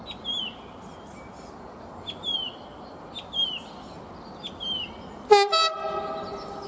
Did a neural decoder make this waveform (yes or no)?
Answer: no